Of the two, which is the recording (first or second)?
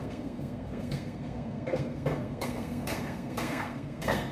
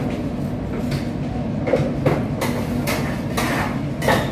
second